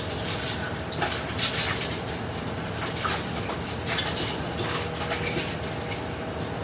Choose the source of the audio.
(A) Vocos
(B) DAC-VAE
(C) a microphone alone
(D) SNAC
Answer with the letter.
C